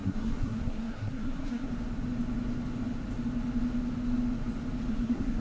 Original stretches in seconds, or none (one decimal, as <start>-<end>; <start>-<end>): 1.7-4.9